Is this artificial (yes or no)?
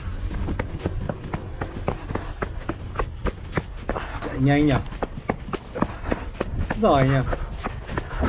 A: no